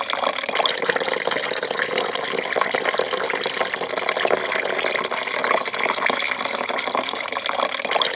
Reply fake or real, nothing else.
real